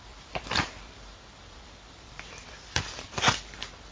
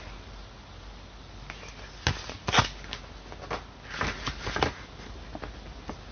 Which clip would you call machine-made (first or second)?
first